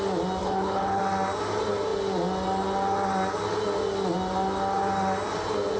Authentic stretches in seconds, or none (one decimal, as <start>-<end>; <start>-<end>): 0.0-0.4; 1.0-5.8